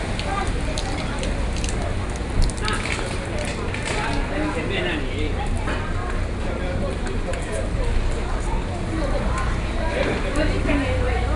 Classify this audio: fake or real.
real